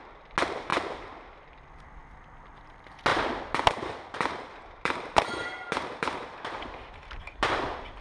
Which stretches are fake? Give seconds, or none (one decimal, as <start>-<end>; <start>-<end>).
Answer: 3.1-8.0